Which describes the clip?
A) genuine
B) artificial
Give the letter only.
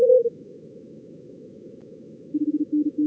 B